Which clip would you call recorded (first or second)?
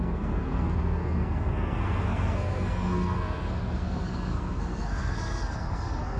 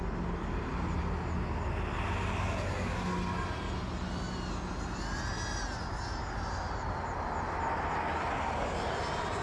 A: second